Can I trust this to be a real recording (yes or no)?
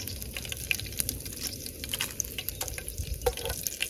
yes